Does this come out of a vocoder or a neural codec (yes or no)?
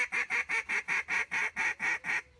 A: yes